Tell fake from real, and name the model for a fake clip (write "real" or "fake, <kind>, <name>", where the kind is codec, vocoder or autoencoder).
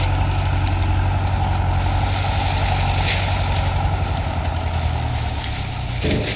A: real